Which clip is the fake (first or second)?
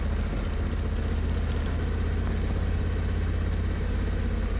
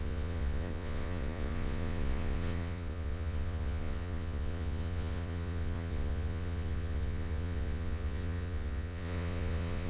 second